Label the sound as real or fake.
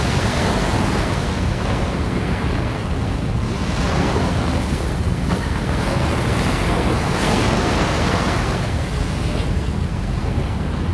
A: fake